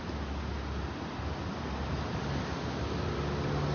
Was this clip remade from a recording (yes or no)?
no